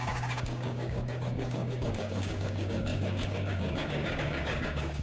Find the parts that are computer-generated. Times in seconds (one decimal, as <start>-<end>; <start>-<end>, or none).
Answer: 0.0-5.0